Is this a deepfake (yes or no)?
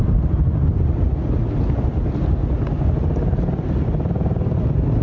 no